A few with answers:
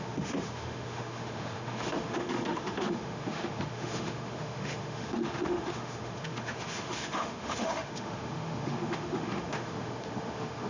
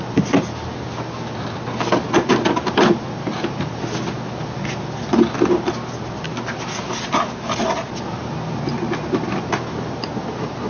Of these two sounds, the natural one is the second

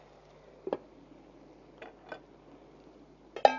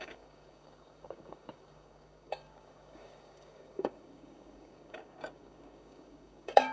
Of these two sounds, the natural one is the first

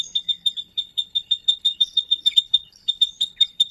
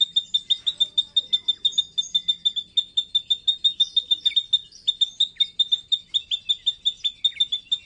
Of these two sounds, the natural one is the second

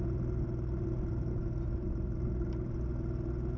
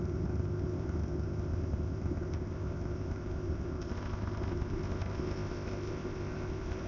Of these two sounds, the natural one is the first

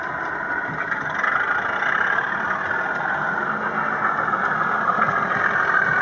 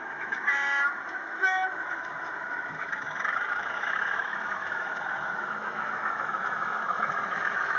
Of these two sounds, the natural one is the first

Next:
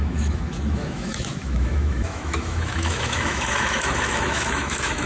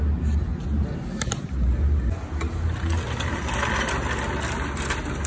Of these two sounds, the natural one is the second